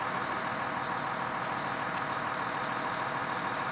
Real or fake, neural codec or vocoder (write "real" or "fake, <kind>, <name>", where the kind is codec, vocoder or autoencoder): real